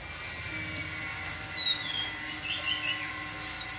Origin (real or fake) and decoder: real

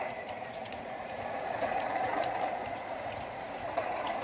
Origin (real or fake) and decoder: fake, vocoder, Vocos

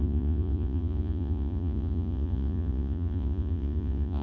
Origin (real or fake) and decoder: fake, vocoder, Vocos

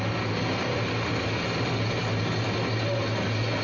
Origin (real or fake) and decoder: real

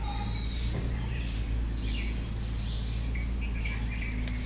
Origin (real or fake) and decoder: real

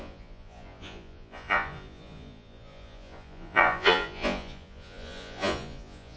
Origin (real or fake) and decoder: fake, vocoder, Vocos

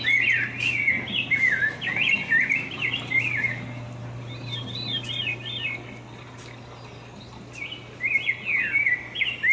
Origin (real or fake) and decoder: real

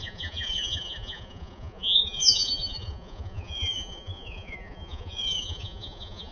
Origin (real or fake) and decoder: fake, vocoder, Vocos